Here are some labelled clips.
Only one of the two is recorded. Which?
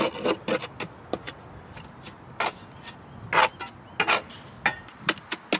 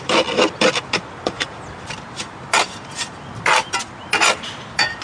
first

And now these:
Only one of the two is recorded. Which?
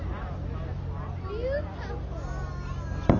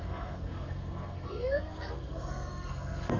first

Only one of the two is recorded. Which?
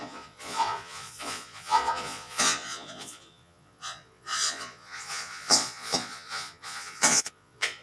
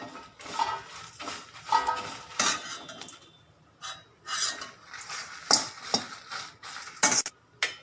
second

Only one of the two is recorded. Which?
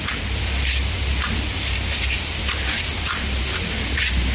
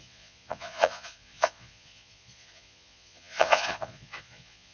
first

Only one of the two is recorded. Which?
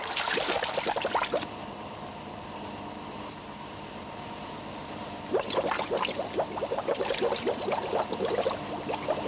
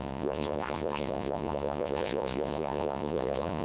first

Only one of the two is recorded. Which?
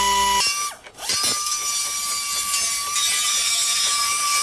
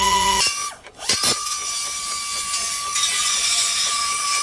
first